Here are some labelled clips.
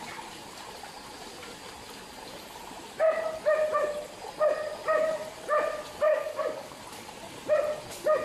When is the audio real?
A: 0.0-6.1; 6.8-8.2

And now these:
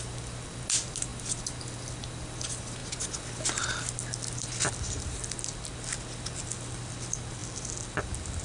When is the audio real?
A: 0.0-8.4

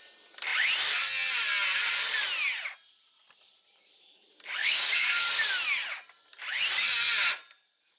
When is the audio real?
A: 0.0-4.6; 5.3-8.0